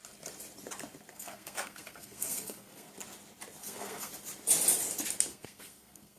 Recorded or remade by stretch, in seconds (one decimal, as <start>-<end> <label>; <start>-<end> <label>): 0.0-1.1 recorded; 1.1-2.9 remade; 2.9-3.6 recorded; 3.6-4.1 remade; 4.1-5.3 recorded; 5.3-6.2 remade